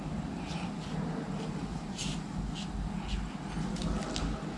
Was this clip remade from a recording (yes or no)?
no